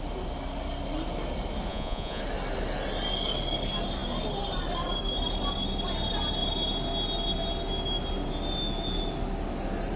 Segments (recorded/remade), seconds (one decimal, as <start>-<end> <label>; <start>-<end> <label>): 0.0-1.7 recorded; 1.7-2.2 remade; 2.2-10.0 recorded